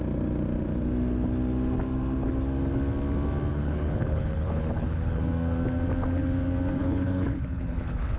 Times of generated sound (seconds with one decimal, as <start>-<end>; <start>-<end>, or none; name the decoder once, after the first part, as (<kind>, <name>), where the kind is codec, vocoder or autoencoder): 3.5-5.2 (codec, HILCodec); 6.8-8.2